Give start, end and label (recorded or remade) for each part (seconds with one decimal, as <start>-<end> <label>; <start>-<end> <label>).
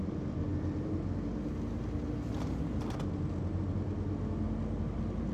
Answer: 0.0-5.3 recorded